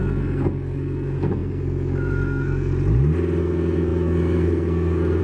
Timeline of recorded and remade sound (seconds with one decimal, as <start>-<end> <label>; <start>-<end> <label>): 0.0-2.7 remade; 2.7-3.4 recorded; 3.4-5.2 remade